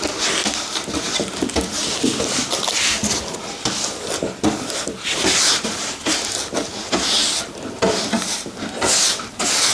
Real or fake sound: real